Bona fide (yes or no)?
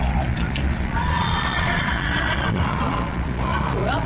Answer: no